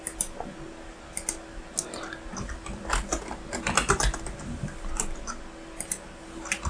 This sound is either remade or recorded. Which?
recorded